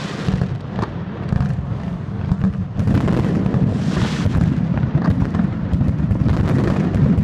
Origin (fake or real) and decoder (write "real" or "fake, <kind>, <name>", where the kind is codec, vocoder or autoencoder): real